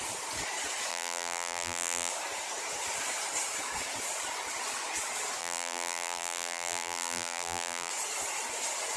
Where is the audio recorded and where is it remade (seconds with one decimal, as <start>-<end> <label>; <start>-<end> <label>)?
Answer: 0.0-0.9 recorded; 0.9-2.1 remade; 2.1-5.4 recorded; 5.4-7.9 remade; 7.9-9.0 recorded

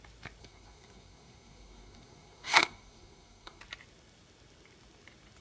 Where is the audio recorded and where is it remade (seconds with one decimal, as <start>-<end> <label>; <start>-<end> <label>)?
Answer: 0.0-0.4 recorded; 0.4-3.6 remade; 3.6-5.4 recorded